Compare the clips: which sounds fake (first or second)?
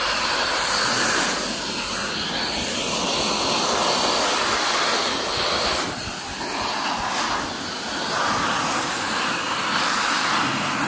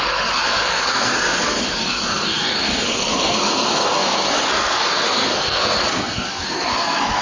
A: second